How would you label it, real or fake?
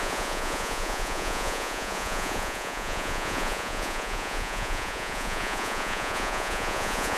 fake